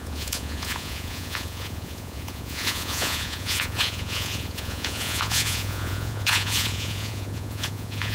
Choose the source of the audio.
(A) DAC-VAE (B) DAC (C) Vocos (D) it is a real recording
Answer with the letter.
C